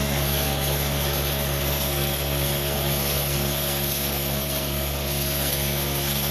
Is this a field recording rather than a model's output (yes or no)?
no